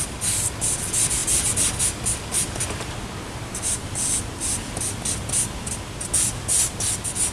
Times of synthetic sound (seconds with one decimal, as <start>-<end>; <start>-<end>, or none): none